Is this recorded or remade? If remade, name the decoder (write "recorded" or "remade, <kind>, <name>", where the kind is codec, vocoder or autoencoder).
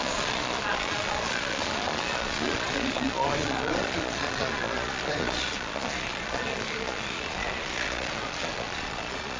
remade, vocoder, Vocos